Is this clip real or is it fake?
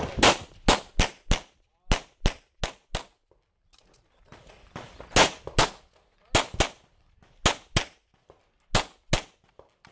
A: real